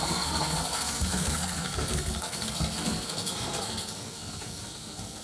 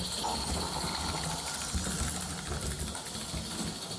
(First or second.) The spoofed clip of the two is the first